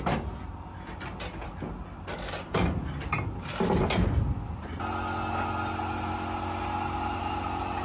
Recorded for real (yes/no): yes